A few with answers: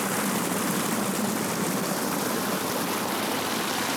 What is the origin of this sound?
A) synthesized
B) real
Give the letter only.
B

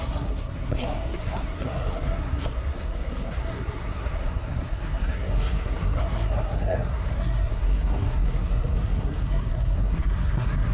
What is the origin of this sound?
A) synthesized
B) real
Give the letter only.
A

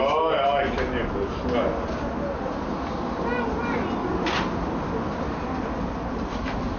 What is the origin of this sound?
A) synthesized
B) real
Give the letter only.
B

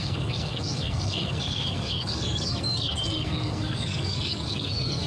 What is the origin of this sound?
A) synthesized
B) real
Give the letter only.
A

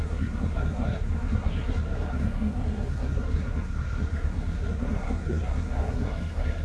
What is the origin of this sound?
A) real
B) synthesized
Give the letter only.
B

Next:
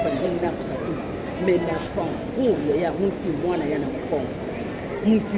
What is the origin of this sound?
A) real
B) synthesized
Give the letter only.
A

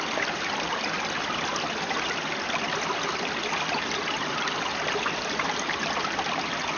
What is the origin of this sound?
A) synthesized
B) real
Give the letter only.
B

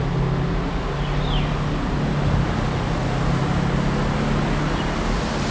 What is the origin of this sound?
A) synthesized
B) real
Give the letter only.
B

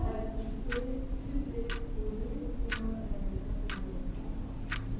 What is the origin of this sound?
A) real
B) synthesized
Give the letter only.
A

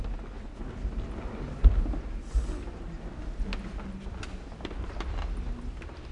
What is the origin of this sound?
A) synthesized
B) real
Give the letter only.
B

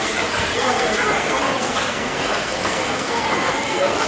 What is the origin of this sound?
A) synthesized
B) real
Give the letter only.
A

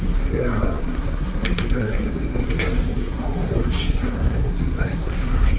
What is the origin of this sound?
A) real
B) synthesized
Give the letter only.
B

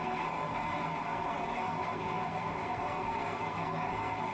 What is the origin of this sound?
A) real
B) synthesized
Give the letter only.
B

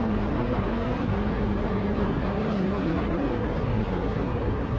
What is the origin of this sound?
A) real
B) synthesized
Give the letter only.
B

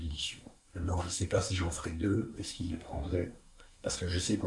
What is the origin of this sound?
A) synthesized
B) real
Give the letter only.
A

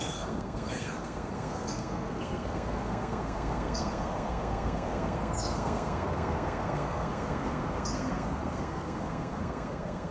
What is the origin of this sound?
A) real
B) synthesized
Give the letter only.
B